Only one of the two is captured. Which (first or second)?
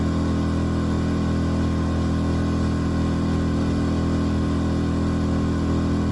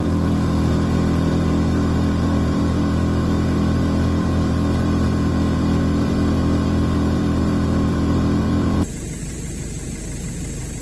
first